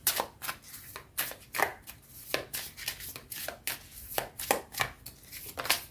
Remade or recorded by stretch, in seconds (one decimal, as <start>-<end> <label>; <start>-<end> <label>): 0.0-5.9 recorded